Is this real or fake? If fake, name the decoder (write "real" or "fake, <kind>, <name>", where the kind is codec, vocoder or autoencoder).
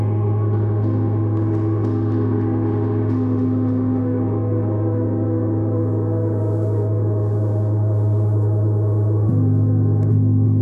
fake, autoencoder, DAC-VAE